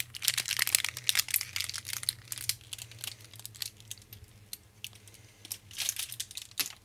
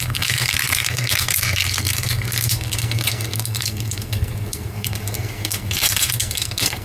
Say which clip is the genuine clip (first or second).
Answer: first